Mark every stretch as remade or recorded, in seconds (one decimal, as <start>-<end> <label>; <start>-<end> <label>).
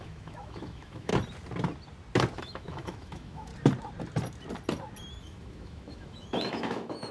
0.0-1.1 remade; 1.1-2.4 recorded; 2.4-3.5 remade; 3.5-5.2 recorded; 5.2-7.1 remade